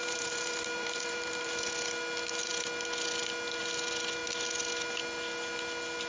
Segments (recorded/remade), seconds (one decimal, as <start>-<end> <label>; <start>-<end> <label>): 0.0-1.7 remade; 1.7-6.1 recorded